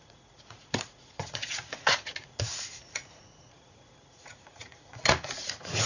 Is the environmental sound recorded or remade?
remade